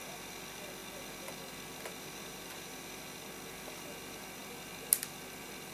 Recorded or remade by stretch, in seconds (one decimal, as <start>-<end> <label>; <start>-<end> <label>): 0.0-5.7 recorded